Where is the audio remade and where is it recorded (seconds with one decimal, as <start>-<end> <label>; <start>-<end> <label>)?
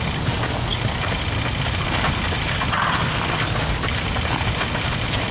0.0-5.3 recorded